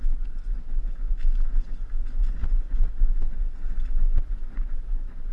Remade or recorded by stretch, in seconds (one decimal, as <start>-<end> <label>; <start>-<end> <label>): 0.0-5.3 recorded